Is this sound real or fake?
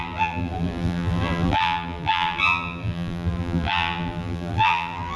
fake